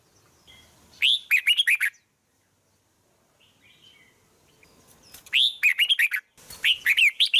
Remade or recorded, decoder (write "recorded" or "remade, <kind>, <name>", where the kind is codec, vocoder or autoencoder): recorded